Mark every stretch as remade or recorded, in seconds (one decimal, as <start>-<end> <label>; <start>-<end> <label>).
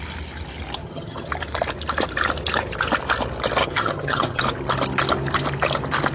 0.0-0.8 recorded; 0.8-1.3 remade; 1.3-3.6 recorded; 3.6-4.4 remade; 4.4-6.1 recorded